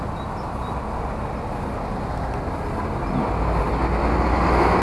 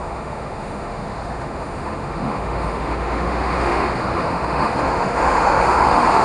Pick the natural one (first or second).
first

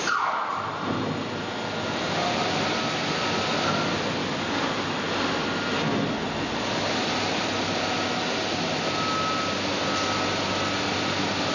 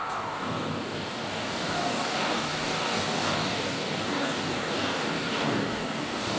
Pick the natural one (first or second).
first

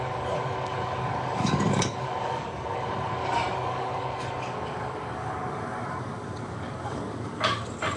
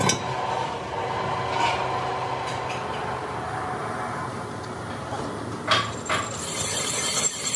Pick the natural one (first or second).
second